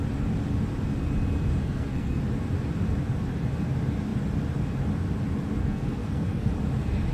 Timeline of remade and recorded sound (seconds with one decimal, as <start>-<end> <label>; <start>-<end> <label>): 0.0-1.6 recorded; 1.6-2.2 remade; 2.2-5.6 recorded; 5.6-6.5 remade; 6.5-7.1 recorded